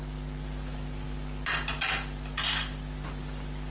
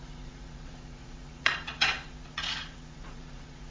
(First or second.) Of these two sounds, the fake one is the second